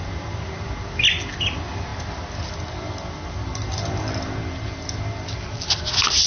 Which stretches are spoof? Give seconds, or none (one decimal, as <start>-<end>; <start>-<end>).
none